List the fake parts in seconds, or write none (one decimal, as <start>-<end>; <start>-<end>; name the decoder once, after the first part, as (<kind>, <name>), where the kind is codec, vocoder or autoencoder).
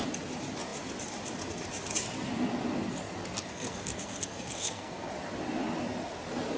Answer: 3.4-5.1 (codec, SNAC)